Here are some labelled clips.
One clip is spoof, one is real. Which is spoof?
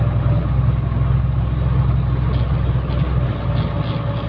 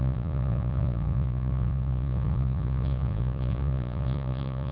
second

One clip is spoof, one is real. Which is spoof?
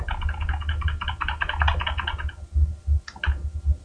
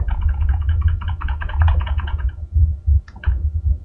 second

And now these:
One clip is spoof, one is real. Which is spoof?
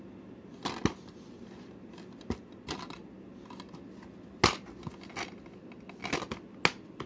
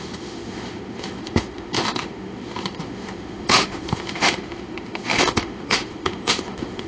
second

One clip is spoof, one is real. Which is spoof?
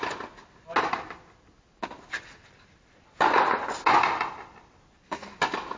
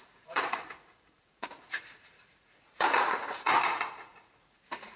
second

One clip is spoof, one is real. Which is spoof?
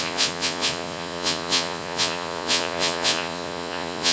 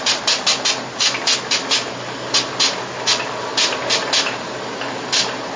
first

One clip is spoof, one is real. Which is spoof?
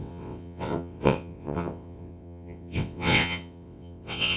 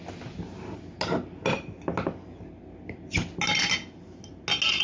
first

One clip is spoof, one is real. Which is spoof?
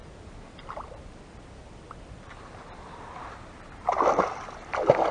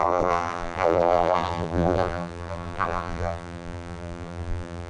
second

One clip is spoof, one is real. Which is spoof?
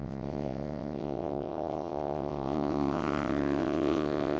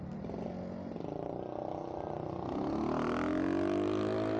first